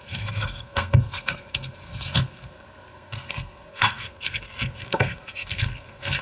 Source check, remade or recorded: remade